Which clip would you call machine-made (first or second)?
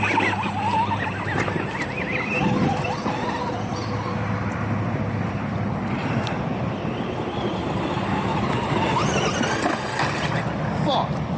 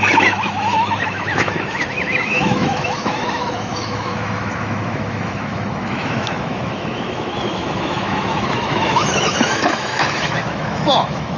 second